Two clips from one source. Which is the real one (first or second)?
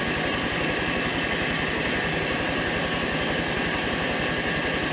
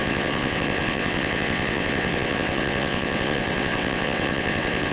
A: first